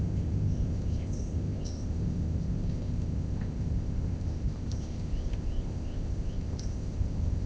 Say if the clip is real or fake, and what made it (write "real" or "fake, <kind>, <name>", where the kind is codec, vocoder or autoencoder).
fake, codec, ZipCodec